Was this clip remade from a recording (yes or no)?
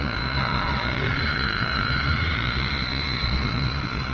yes